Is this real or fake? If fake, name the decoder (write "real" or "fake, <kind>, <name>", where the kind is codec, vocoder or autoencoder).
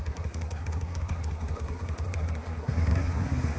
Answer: fake, codec, SNAC